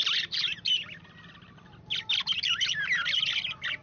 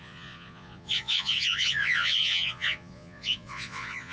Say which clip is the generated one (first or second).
second